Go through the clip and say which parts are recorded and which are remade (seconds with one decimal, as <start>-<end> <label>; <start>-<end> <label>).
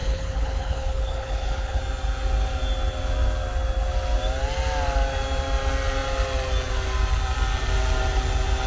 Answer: 0.0-1.8 remade; 1.8-8.7 recorded